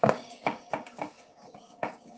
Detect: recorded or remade remade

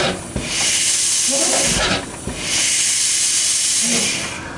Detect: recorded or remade recorded